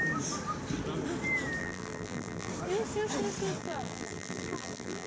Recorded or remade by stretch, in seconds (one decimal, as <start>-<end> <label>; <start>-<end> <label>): 0.0-1.6 recorded; 1.6-2.5 remade; 2.5-3.6 recorded; 3.6-5.1 remade